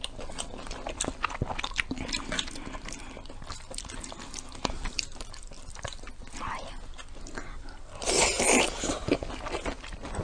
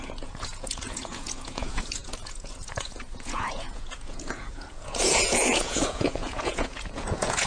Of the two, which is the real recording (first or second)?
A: first